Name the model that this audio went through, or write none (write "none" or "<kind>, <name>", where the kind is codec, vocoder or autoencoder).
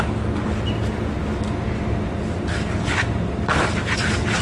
none